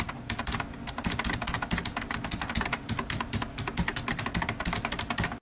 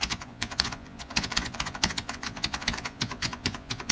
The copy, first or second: second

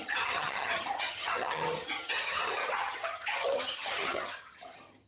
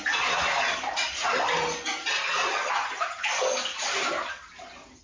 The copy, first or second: first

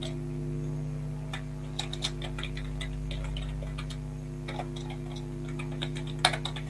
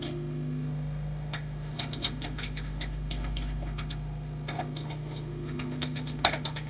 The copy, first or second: second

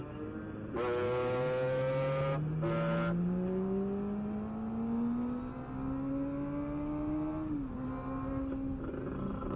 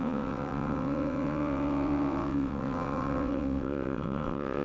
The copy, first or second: second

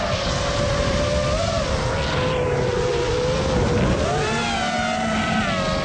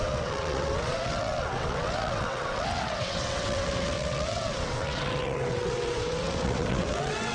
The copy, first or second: second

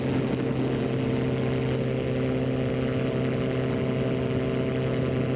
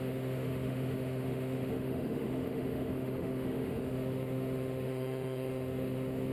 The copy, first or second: second